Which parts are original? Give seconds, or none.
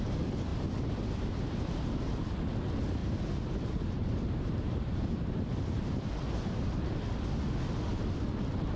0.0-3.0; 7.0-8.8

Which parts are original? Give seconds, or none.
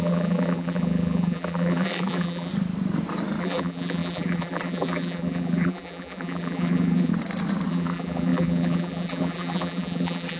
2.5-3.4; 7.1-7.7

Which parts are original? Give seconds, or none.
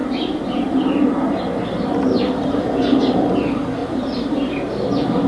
0.9-3.8; 4.5-5.3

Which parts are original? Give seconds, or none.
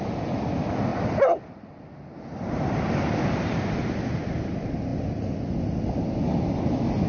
0.0-7.1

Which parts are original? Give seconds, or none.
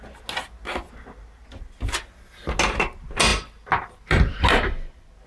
0.0-5.3